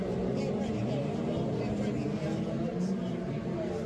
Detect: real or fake real